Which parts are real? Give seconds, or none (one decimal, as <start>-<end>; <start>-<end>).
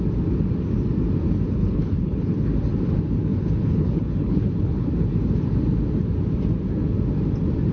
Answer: 0.0-1.6; 2.5-3.3; 4.9-7.7